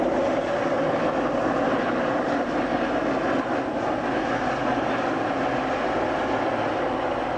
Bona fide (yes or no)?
yes